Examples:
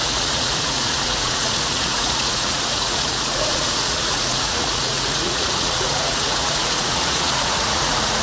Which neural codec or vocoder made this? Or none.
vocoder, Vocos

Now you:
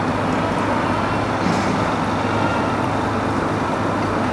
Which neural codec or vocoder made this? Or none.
none